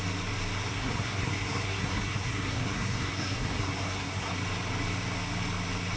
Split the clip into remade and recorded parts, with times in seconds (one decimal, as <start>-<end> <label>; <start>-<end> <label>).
0.0-0.7 recorded; 0.7-4.3 remade; 4.3-6.0 recorded